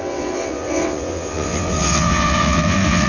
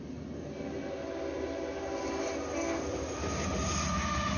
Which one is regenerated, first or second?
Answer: first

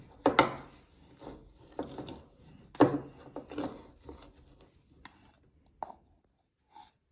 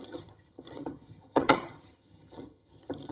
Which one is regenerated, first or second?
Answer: second